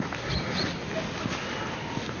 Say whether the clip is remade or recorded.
recorded